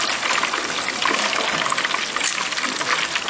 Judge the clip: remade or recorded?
recorded